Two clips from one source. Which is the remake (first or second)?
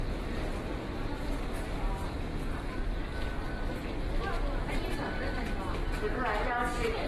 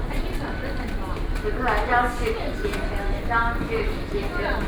second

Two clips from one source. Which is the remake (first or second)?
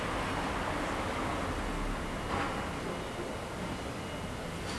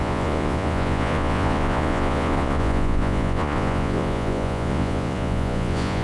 second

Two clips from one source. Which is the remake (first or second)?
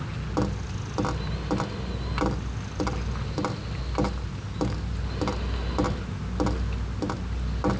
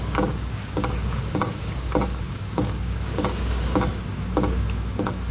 second